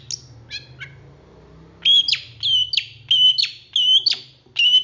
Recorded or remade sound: recorded